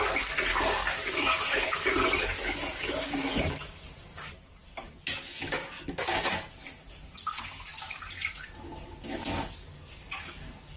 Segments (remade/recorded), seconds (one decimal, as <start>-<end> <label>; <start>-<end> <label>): 0.0-0.5 recorded; 0.5-3.9 remade; 3.9-4.6 recorded; 4.6-6.2 remade; 6.2-7.2 recorded; 7.2-10.8 remade